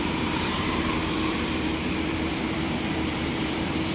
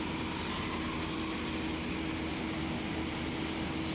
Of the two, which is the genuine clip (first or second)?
second